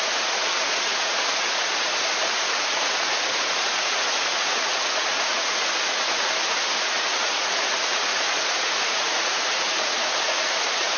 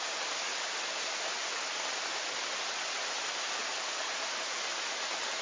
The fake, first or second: first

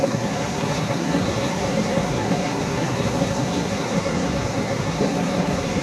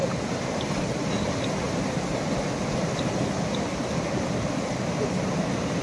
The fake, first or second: first